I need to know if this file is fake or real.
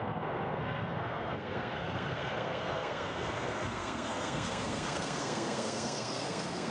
fake